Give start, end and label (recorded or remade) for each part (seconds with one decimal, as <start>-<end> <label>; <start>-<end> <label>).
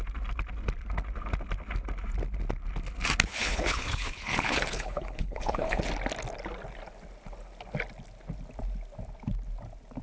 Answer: 0.0-3.3 recorded; 3.3-5.8 remade; 5.8-10.0 recorded